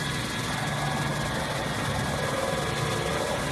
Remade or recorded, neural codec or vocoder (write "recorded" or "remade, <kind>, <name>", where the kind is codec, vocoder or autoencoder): recorded